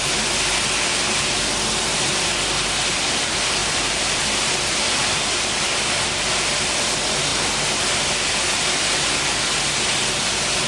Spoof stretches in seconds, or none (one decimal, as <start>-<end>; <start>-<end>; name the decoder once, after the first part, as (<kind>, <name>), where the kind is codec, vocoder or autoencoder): 3.6-5.9 (vocoder, BigVGAN v2); 7.3-7.8